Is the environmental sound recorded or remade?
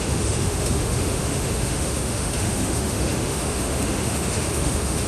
remade